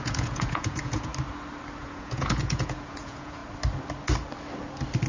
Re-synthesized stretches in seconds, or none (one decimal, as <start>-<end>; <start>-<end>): 0.0-1.1; 1.8-3.4